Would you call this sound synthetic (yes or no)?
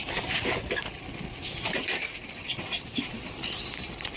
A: no